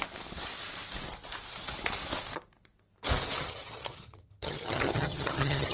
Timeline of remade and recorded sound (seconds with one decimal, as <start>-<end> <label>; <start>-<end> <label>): 0.0-3.4 recorded; 3.4-5.7 remade